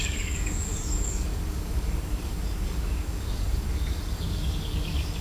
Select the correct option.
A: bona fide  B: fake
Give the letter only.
B